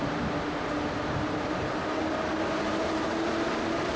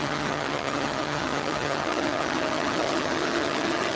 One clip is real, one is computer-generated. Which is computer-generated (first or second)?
second